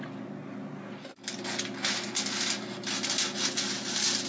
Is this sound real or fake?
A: real